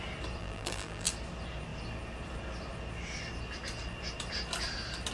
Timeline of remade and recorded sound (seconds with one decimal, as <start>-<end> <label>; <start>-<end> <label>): 0.0-0.4 recorded; 0.4-1.1 remade; 1.1-5.1 recorded